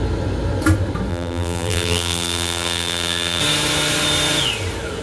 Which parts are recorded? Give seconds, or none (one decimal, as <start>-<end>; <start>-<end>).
0.0-1.1; 3.4-5.0